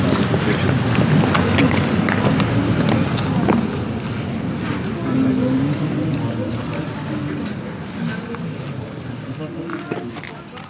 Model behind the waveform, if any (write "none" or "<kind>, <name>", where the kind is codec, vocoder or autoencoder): none